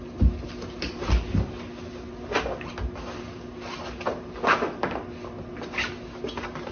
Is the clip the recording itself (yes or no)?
yes